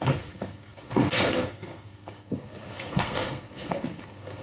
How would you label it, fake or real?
fake